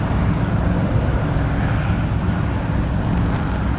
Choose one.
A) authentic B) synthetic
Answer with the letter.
A